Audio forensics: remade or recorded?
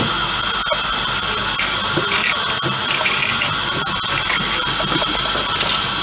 recorded